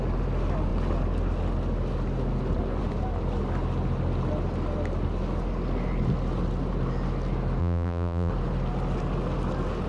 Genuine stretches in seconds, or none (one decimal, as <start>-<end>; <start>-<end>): 0.0-7.6; 8.3-9.9